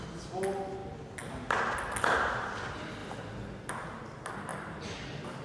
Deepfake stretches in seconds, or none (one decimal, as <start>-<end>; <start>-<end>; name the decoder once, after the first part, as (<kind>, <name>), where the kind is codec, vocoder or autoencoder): none